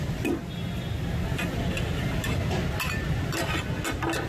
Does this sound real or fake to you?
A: real